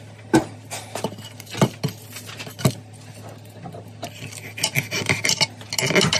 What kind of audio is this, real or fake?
real